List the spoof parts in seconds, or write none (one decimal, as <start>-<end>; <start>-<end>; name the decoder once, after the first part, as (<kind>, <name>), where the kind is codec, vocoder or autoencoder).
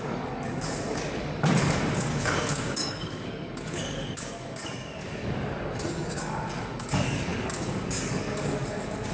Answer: 0.0-9.1 (codec, DAC)